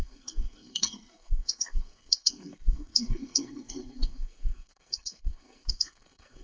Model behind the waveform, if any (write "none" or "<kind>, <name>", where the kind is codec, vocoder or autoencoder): codec, SNAC